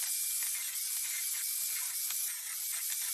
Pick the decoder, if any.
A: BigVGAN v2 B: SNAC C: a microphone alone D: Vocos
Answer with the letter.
C